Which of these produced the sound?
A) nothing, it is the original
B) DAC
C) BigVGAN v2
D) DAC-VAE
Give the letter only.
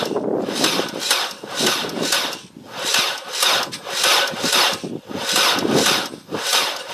A